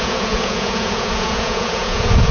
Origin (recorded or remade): remade